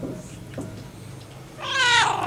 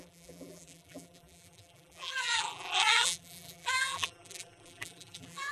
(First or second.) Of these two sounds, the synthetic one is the second